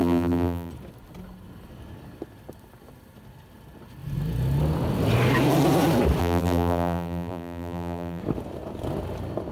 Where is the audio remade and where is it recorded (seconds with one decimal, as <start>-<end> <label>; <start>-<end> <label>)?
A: 0.0-0.7 remade; 0.7-6.2 recorded; 6.2-8.2 remade; 8.2-9.5 recorded